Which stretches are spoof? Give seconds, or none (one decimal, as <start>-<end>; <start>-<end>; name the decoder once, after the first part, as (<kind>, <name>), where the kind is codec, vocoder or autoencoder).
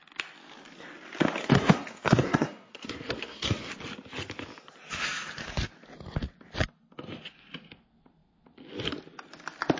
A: 1.4-3.7 (codec, SNAC)